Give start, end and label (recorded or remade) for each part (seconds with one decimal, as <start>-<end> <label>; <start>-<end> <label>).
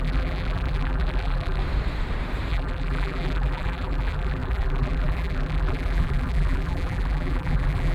0.0-1.6 remade; 1.6-2.5 recorded; 2.5-7.9 remade